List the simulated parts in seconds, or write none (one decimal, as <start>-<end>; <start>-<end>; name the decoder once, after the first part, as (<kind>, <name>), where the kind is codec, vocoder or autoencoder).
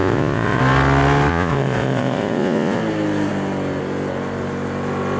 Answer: 0.0-0.6 (vocoder, Vocos); 1.3-2.8